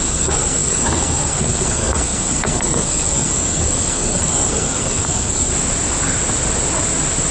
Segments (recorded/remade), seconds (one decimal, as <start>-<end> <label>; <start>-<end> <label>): 0.0-5.5 remade; 5.5-7.3 recorded